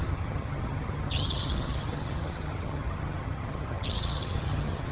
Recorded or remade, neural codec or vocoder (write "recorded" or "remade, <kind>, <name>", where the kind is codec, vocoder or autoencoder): remade, vocoder, HiFi-GAN